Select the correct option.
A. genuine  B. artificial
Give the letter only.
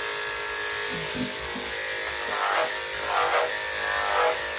A